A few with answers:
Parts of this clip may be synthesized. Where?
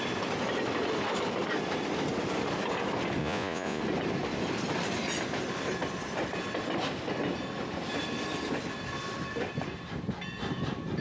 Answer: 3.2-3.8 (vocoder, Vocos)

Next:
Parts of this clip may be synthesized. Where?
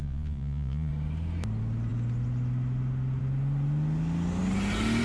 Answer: 0.0-0.9 (vocoder, Vocos)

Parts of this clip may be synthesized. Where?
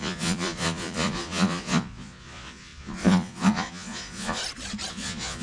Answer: 0.0-4.4 (vocoder, Vocos); 4.9-5.4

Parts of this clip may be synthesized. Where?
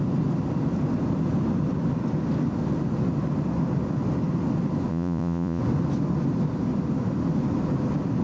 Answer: 4.9-5.6 (vocoder, Vocos)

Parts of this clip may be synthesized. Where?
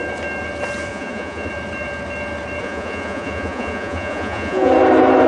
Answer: 0.9-1.5 (vocoder, Vocos); 2.6-4.7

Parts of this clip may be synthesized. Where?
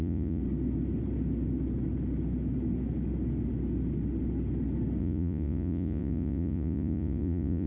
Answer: 0.0-0.4 (vocoder, Vocos); 5.0-7.7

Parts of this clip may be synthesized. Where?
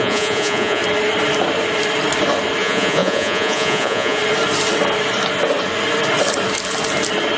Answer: 0.0-0.8 (vocoder, Vocos); 2.6-4.2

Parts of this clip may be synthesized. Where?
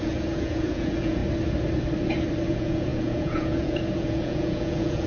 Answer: 0.0-1.2 (vocoder, Vocos); 2.5-5.1